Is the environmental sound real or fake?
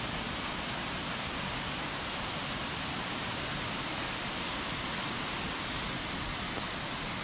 real